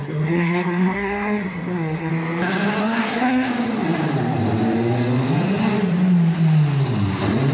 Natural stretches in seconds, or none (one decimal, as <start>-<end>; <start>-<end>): 2.1-2.8; 3.5-7.5